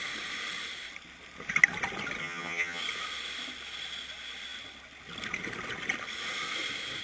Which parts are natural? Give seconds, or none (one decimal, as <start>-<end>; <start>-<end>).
0.0-2.2; 2.8-7.0